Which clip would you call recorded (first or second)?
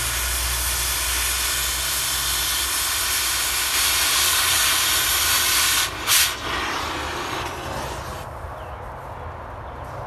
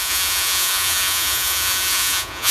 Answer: first